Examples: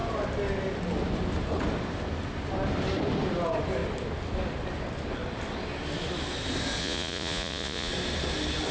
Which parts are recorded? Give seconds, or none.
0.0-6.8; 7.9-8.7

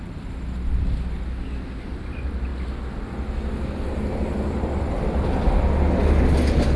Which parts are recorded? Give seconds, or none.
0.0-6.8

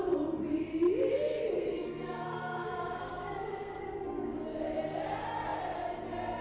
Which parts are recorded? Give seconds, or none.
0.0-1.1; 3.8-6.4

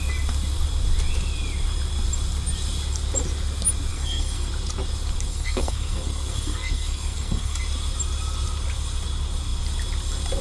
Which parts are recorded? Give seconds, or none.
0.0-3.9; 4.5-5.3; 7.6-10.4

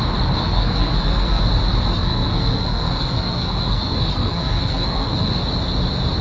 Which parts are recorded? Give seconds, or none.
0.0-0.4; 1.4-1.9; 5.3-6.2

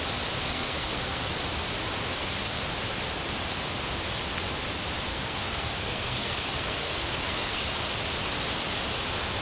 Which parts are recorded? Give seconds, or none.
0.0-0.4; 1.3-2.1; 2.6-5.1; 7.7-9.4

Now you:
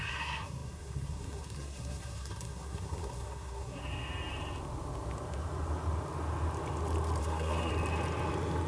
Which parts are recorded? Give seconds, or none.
3.8-7.2; 7.7-8.7